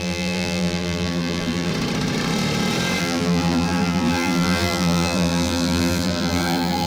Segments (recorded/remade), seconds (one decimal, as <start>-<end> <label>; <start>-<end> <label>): 0.0-1.7 remade; 1.7-3.0 recorded; 3.0-6.9 remade